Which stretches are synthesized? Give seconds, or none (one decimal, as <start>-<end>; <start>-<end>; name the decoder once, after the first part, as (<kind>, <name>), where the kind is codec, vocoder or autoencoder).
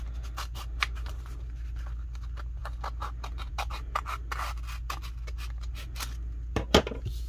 none